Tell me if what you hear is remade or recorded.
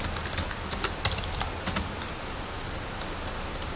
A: recorded